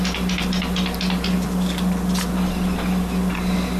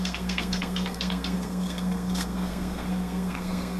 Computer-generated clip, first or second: second